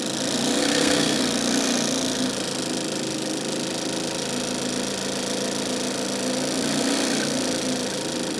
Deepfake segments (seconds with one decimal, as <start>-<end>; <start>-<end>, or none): 0.6-1.2